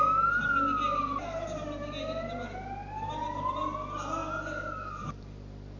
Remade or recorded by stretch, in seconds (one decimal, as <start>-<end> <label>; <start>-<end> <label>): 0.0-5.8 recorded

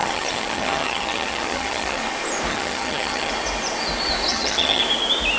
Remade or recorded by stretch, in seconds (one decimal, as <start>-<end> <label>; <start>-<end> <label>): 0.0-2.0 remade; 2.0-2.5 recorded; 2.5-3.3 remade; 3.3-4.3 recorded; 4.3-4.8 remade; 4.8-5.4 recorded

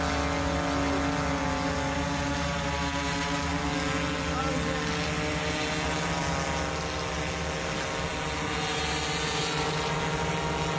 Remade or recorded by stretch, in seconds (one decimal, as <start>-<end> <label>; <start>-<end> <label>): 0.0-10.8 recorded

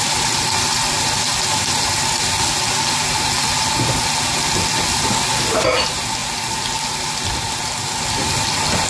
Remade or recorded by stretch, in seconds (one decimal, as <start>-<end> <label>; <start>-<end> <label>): 0.0-8.9 recorded

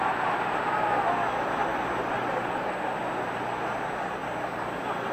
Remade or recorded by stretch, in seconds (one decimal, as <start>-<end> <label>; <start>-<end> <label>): 0.0-2.0 recorded; 2.0-2.7 remade; 2.7-5.1 recorded

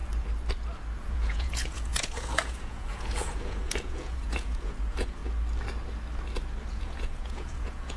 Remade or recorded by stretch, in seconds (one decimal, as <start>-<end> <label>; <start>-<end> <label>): 0.0-1.0 recorded; 1.0-5.2 remade; 5.2-6.7 recorded; 6.7-8.0 remade

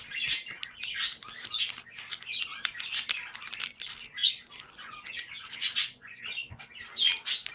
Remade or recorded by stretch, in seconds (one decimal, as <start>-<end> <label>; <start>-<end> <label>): 0.0-4.2 recorded; 4.2-6.7 remade; 6.7-7.5 recorded